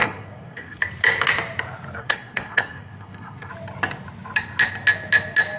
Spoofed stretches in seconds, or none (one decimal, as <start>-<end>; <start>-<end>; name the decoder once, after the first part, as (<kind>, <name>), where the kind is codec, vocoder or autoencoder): 0.0-0.8 (codec, SNAC); 2.0-3.5